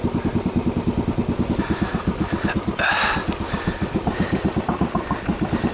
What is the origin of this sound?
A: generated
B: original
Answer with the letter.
B